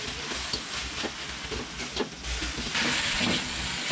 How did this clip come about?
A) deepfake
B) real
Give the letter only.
B